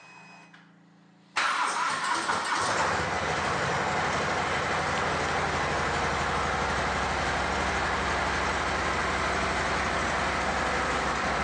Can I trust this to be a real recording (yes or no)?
yes